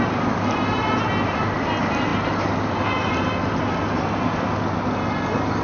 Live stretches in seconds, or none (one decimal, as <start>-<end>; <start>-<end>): 0.0-5.6